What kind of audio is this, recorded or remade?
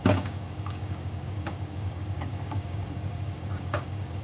remade